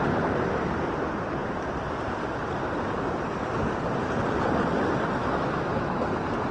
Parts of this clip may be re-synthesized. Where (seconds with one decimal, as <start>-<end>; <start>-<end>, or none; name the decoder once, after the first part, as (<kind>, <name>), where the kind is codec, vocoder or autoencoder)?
5.2-6.0 (autoencoder, DAC-VAE)